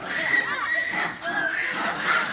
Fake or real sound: real